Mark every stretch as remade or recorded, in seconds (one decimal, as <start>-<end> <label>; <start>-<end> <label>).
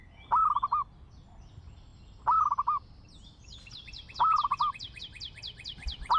0.0-6.2 recorded